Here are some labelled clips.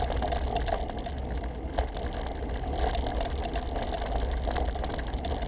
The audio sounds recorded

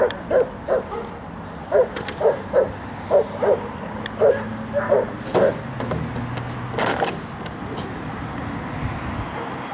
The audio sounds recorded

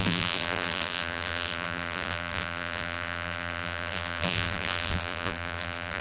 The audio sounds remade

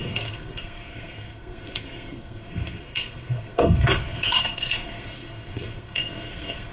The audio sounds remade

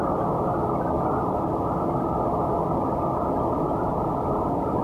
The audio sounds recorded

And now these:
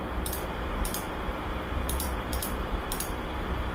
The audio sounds remade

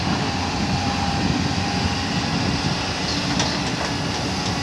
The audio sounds recorded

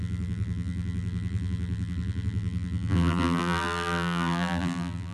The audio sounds remade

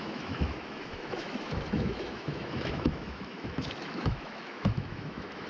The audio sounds remade